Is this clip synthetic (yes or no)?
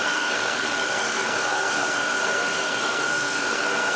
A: yes